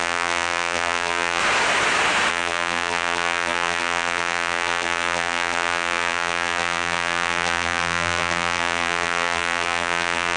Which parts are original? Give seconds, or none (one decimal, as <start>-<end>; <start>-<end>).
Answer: 1.4-2.3